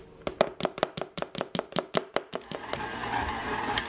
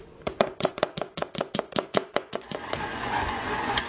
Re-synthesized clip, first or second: second